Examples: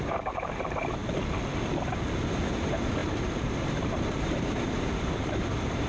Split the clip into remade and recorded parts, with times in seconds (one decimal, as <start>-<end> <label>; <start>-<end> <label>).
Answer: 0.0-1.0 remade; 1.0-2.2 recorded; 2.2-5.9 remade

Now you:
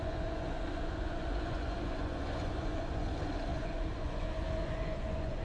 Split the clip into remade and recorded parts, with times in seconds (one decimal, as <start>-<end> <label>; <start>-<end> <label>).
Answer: 0.0-5.4 remade

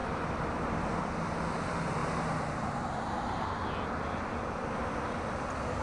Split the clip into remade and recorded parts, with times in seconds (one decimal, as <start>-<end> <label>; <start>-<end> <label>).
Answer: 0.0-2.0 remade; 2.0-5.8 recorded

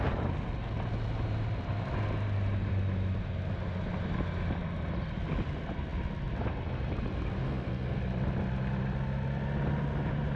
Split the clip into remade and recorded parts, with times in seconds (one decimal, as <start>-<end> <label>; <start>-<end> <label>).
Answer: 0.0-7.4 recorded; 7.4-8.0 remade; 8.0-10.4 recorded

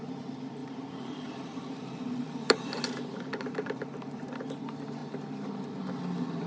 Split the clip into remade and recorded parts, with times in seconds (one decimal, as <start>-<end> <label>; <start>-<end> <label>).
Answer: 0.0-0.6 recorded; 0.6-4.5 remade; 4.5-6.5 recorded

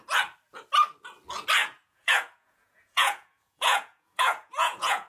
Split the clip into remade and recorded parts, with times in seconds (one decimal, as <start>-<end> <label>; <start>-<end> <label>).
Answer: 0.0-1.6 recorded; 1.6-5.1 remade

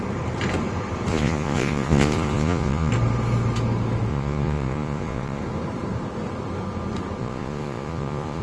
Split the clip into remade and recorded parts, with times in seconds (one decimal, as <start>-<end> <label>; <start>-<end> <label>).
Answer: 0.0-1.1 recorded; 1.1-2.9 remade; 2.9-4.1 recorded; 4.1-5.4 remade; 5.4-7.2 recorded; 7.2-8.4 remade